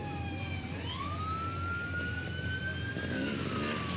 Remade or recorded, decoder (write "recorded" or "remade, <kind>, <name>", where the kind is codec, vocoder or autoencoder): recorded